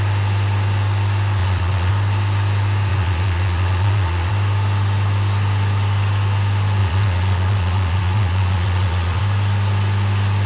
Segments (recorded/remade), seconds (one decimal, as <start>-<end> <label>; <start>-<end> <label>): 0.0-1.4 recorded; 1.4-1.9 remade; 1.9-2.9 recorded; 2.9-4.3 remade; 4.3-6.8 recorded; 6.8-9.2 remade; 9.2-10.5 recorded